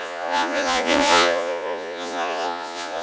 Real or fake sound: fake